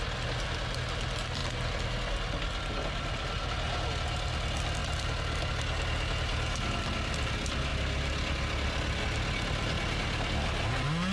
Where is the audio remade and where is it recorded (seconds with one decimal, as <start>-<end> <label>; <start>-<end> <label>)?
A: 0.0-11.1 recorded

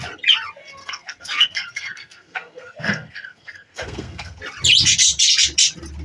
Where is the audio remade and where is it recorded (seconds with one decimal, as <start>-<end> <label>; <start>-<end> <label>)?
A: 0.0-0.8 recorded; 0.8-4.4 remade; 4.4-6.0 recorded

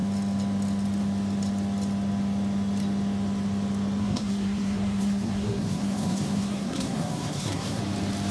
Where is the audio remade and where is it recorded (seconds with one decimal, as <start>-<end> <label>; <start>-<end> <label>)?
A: 0.0-4.0 recorded; 4.0-7.8 remade; 7.8-8.3 recorded

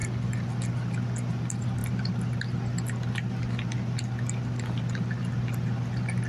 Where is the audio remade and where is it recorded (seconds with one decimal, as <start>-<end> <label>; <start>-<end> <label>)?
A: 0.0-6.3 recorded

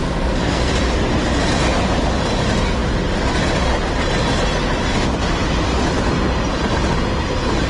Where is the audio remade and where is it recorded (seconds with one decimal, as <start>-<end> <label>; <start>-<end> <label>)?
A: 0.0-0.7 remade; 0.7-7.7 recorded

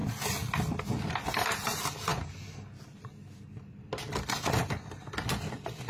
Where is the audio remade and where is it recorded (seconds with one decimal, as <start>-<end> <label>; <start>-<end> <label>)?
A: 0.0-5.9 recorded